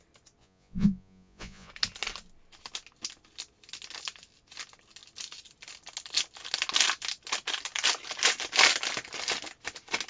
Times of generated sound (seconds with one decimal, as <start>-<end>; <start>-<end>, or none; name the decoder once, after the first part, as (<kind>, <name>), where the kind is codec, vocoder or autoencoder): 0.4-1.7 (vocoder, Vocos)